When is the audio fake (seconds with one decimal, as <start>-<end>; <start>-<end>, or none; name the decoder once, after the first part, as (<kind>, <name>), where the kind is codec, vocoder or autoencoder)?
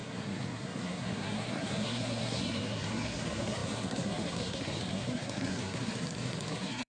0.0-6.9 (codec, SNAC)